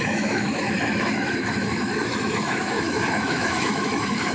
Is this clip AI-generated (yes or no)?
yes